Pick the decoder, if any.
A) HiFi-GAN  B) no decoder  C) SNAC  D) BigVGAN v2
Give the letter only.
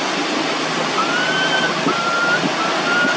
B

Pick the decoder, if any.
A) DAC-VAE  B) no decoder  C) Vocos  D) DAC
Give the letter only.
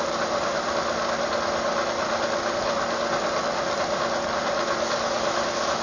B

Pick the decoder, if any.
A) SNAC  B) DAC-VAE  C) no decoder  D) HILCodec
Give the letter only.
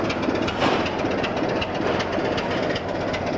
C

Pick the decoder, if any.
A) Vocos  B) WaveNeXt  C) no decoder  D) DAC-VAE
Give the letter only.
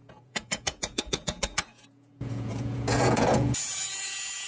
A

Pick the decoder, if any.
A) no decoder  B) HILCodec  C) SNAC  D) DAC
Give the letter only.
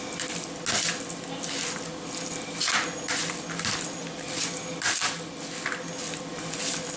A